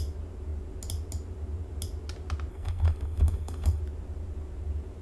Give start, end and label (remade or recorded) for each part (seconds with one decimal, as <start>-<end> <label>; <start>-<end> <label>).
0.0-2.5 recorded; 2.5-3.8 remade; 3.8-5.0 recorded